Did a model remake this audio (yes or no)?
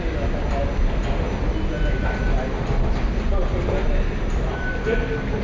no